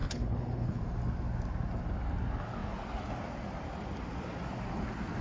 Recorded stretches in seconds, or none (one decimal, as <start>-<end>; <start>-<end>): 0.8-5.2